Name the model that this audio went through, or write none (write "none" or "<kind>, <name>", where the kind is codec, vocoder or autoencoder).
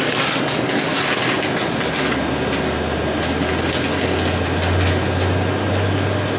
none